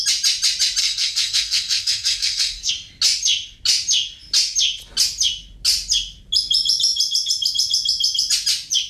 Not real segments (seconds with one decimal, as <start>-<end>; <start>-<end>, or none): 0.8-2.7